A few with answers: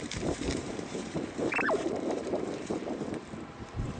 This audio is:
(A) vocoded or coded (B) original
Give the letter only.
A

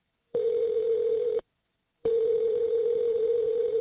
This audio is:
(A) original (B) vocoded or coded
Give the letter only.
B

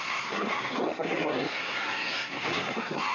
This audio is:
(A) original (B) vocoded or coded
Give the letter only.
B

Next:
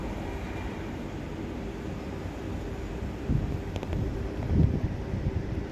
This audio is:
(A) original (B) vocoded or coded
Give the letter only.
A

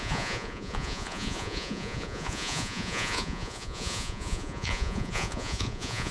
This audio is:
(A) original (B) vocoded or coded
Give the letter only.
B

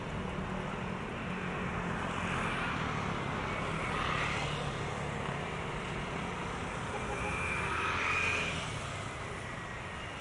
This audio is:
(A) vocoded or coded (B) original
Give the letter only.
B